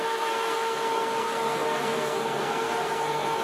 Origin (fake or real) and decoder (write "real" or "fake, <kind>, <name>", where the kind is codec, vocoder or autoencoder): fake, codec, SNAC